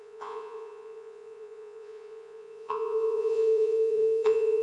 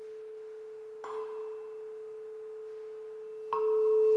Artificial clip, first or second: first